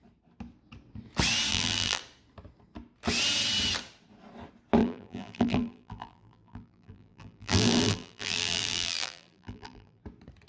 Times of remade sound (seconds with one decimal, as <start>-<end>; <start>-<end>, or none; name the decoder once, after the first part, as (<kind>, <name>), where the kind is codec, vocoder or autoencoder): 1.5-2.0 (vocoder, BigVGAN v2); 4.8-10.0